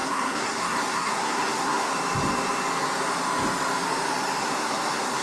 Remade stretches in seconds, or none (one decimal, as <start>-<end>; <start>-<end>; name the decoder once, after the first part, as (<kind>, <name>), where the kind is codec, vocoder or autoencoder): 0.0-1.9 (codec, SNAC); 4.4-5.2